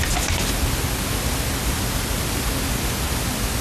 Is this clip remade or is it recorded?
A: recorded